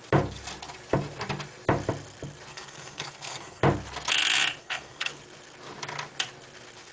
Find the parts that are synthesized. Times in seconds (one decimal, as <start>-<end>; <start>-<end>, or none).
2.5-3.6; 4.6-5.1